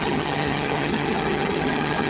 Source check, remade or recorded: remade